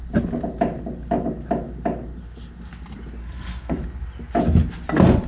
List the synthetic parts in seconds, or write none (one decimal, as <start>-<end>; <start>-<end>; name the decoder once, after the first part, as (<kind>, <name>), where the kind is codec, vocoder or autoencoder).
3.2-3.8 (codec, SNAC)